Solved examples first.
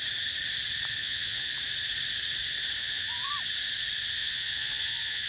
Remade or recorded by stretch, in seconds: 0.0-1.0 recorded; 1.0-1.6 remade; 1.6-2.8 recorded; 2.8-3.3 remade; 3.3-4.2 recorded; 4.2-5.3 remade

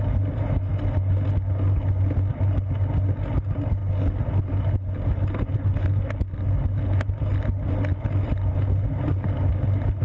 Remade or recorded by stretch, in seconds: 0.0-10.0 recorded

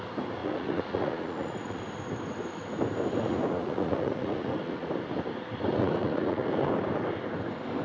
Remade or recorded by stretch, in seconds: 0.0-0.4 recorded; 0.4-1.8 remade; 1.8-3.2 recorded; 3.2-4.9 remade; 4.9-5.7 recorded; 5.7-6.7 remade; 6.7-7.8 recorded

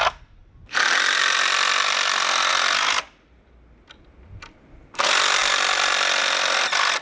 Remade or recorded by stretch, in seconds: 0.0-7.0 recorded

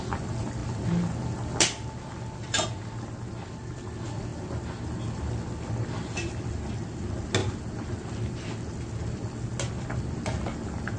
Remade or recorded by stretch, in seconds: 0.0-11.0 recorded